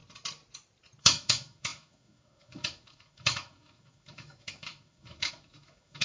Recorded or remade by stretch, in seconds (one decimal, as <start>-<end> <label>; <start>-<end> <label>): 0.0-1.0 recorded; 1.0-6.0 remade